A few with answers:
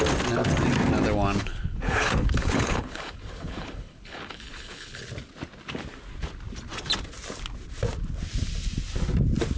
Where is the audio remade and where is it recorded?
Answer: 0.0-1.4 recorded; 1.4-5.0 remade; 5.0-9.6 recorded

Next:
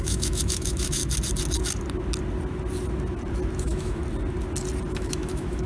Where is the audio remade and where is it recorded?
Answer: 0.0-1.0 remade; 1.0-3.6 recorded; 3.6-4.0 remade; 4.0-4.9 recorded; 4.9-5.7 remade

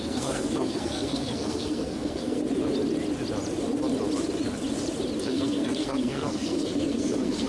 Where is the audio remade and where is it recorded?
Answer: 0.0-2.4 remade; 2.4-5.2 recorded; 5.2-7.5 remade

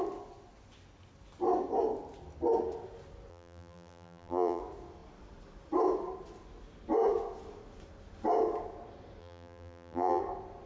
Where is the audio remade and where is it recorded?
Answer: 0.0-3.3 recorded; 3.3-4.6 remade; 4.6-9.2 recorded; 9.2-10.2 remade; 10.2-10.7 recorded

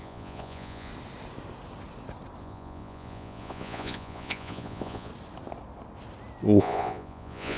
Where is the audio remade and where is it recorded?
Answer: 0.0-0.9 remade; 0.9-2.4 recorded; 2.4-5.1 remade; 5.1-6.6 recorded; 6.6-7.6 remade

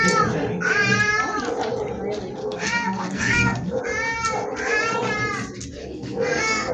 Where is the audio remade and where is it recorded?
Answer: 0.0-2.4 recorded; 2.4-3.8 remade; 3.8-5.8 recorded; 5.8-6.7 remade